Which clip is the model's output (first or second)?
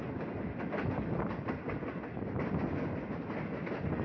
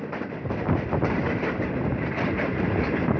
second